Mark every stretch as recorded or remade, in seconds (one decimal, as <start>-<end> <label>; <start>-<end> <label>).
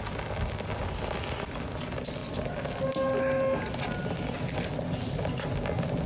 0.0-6.1 recorded